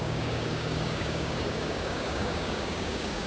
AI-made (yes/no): yes